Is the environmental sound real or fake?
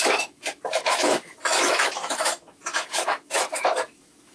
fake